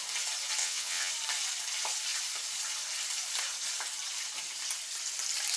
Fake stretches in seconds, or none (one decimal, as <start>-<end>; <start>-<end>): 0.6-1.1